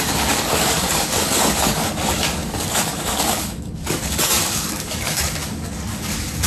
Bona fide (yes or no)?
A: no